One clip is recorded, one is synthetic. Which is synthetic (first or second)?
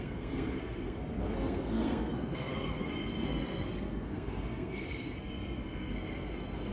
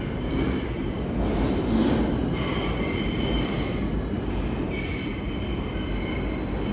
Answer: first